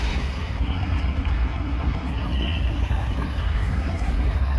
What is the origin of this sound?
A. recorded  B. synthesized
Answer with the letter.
B